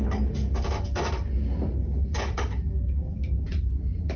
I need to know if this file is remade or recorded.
recorded